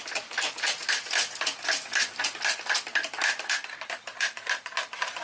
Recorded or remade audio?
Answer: recorded